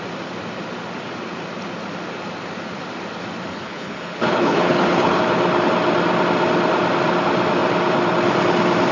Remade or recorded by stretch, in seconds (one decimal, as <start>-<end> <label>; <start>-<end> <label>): 0.0-3.5 recorded; 3.5-5.2 remade; 5.2-8.9 recorded